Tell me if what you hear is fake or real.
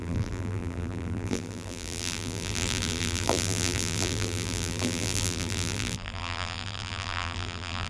fake